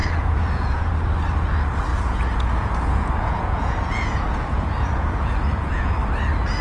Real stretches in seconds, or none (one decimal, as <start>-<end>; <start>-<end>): 0.9-1.9; 5.9-6.6